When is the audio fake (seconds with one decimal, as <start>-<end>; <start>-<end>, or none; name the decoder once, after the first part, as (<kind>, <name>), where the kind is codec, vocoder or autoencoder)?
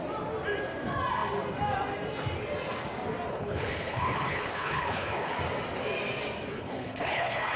3.3-5.3 (codec, HILCodec); 6.5-7.6